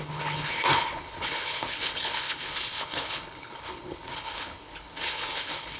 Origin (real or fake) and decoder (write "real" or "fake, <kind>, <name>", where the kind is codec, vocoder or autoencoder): fake, codec, HILCodec